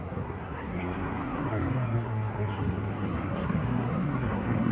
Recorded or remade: remade